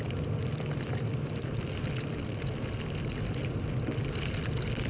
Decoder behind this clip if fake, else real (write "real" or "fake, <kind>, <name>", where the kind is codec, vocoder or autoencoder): real